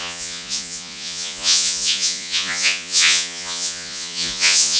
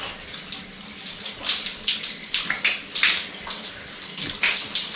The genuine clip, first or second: second